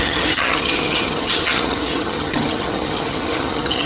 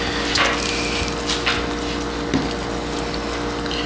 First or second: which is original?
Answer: second